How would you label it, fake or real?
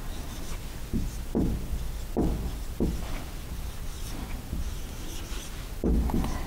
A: real